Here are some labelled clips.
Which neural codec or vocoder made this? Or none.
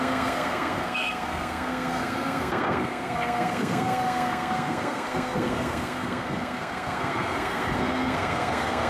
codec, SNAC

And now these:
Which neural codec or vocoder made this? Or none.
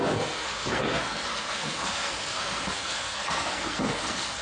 codec, SNAC